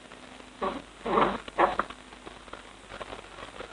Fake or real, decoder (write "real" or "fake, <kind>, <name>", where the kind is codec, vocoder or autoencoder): real